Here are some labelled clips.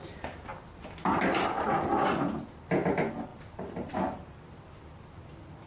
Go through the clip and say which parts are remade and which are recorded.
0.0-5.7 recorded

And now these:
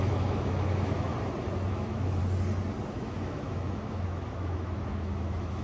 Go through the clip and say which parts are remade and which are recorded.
0.0-1.1 remade; 1.1-1.7 recorded; 1.7-2.2 remade; 2.2-2.9 recorded; 2.9-5.6 remade

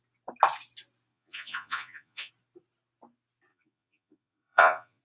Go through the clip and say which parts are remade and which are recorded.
0.0-1.1 recorded; 1.1-2.3 remade; 2.3-3.5 recorded; 3.5-5.0 remade

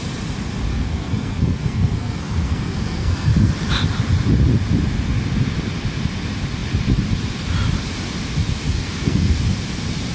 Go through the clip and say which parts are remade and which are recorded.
0.0-0.7 recorded; 0.7-3.5 remade; 3.5-8.7 recorded; 8.7-9.3 remade; 9.3-10.1 recorded

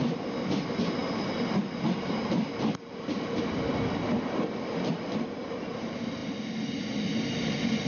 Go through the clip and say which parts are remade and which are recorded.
0.0-7.9 recorded

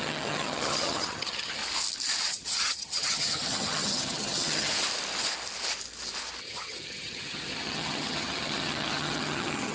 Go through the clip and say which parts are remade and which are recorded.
0.0-1.6 remade; 1.6-2.2 recorded; 2.2-4.7 remade; 4.7-6.4 recorded; 6.4-9.7 remade

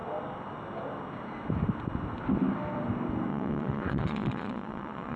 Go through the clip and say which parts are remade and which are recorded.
0.0-3.3 recorded; 3.3-5.2 remade

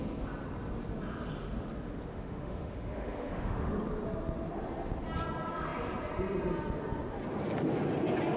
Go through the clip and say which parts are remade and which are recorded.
0.0-2.1 recorded; 2.1-3.7 remade; 3.7-8.4 recorded